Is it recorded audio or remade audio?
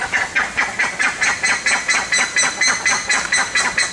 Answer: recorded